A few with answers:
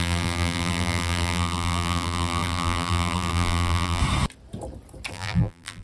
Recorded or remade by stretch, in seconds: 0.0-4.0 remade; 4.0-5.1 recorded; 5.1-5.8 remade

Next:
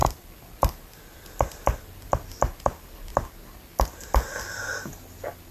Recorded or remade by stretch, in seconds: 0.0-1.5 remade; 1.5-5.5 recorded

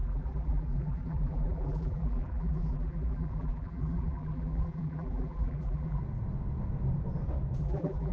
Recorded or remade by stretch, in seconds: 0.0-6.0 remade; 6.0-7.6 recorded; 7.6-8.1 remade

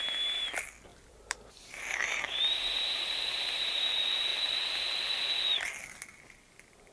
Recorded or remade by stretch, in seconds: 0.0-0.9 recorded; 0.9-3.9 remade; 3.9-6.9 recorded